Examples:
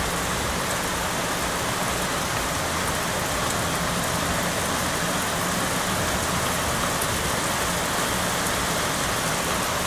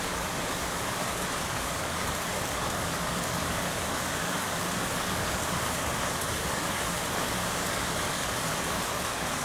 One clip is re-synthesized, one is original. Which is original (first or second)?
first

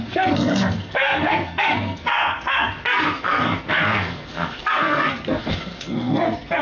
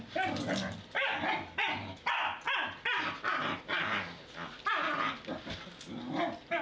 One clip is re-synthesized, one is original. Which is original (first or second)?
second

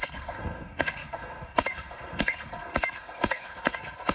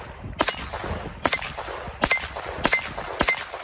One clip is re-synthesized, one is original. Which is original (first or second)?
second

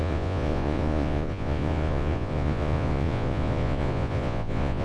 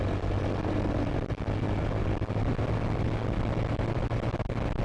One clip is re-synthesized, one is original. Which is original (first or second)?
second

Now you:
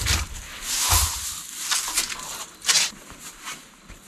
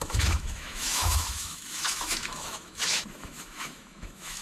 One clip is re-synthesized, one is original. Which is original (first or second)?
first